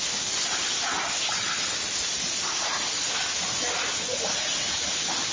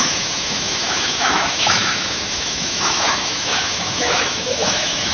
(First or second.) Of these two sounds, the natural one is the first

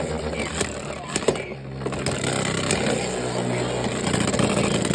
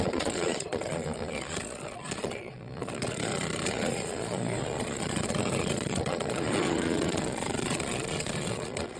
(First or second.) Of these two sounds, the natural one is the first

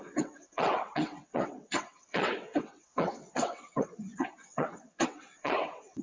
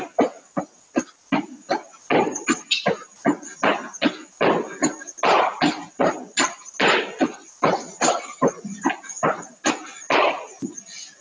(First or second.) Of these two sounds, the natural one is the second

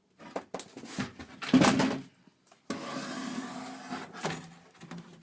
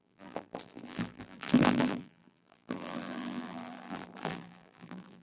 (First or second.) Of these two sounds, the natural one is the first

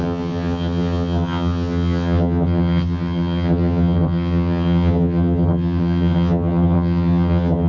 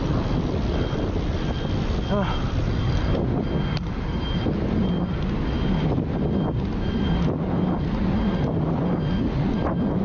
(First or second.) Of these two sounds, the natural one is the second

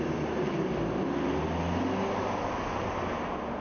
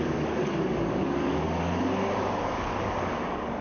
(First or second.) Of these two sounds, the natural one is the first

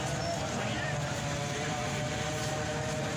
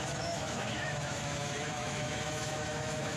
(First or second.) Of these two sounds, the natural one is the first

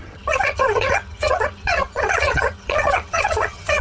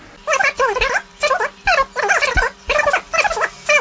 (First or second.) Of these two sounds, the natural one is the second